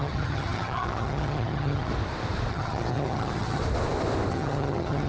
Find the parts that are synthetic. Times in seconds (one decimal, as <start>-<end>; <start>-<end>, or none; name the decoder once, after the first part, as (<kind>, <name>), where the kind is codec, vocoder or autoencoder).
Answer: 0.0-1.9 (vocoder, HiFi-GAN); 2.5-3.6; 4.3-5.1